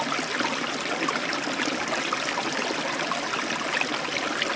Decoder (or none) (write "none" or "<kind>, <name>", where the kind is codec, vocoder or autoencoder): none